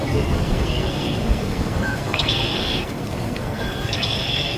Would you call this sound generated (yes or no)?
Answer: yes